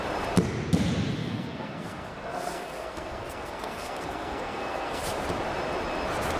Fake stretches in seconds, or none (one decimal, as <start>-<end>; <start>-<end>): 1.2-5.0